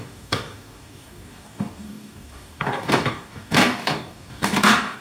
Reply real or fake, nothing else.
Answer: fake